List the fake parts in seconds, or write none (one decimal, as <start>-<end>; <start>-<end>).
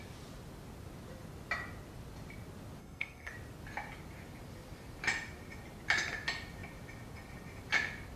2.8-3.3